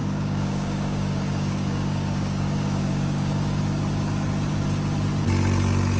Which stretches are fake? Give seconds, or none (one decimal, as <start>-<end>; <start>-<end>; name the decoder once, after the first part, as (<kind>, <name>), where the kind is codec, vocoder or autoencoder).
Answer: 0.0-3.6 (codec, DAC)